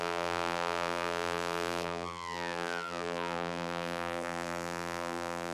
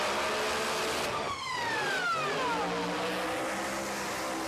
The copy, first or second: first